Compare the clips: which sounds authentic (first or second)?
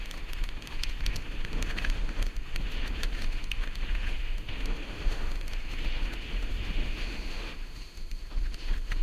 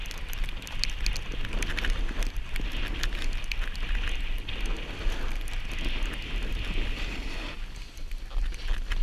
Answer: second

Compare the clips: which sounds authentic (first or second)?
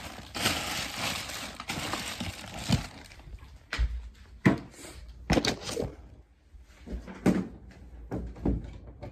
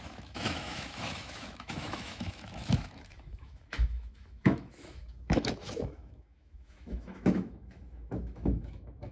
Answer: first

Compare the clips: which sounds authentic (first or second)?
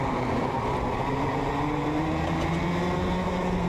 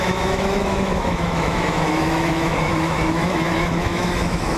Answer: first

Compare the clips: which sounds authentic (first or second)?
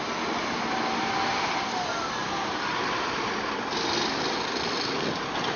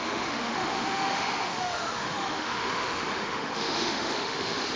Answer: first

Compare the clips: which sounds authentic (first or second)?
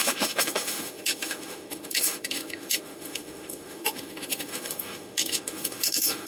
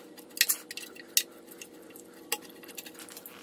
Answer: second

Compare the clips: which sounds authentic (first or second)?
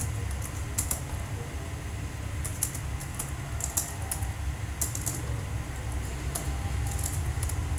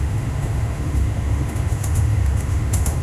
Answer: first